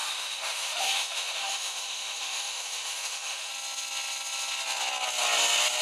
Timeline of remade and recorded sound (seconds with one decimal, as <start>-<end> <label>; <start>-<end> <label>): 0.0-3.5 remade; 3.5-5.8 recorded